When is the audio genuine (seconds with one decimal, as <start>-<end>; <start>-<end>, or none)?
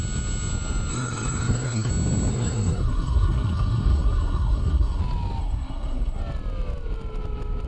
0.0-0.9; 1.9-2.3; 5.0-5.4; 6.2-7.7